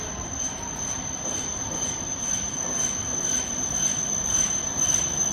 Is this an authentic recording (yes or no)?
no